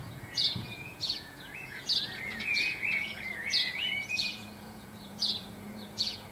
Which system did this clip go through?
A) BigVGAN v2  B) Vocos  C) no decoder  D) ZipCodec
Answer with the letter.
B